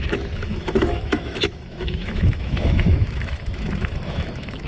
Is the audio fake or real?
fake